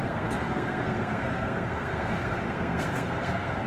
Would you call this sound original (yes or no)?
no